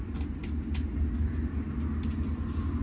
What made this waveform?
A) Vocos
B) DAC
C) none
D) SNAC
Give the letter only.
C